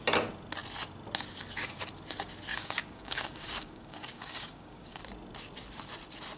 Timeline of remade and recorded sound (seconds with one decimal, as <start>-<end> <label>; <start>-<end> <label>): 0.0-2.5 recorded; 2.5-5.0 remade; 5.0-6.4 recorded